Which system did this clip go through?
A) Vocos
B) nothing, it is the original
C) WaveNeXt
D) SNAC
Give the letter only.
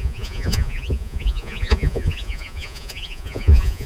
A